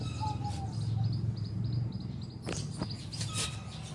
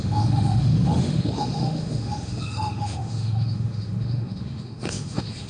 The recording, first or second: first